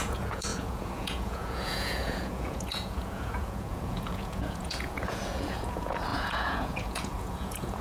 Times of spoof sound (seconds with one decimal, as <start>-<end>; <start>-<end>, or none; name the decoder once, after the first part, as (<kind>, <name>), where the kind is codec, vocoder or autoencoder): 0.0-7.8 (vocoder, Vocos)